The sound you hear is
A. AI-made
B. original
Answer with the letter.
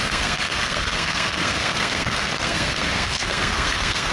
A